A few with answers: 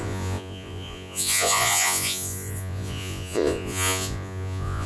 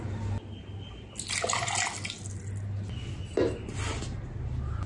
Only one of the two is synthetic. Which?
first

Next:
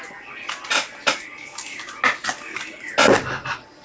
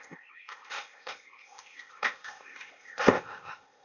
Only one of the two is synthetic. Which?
second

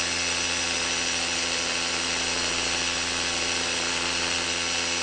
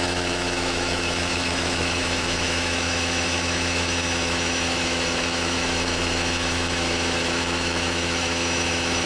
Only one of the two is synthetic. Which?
second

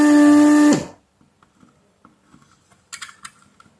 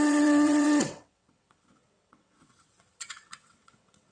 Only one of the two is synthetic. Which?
second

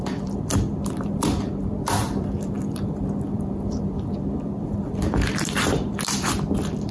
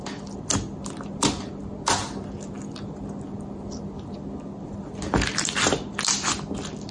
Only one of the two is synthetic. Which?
first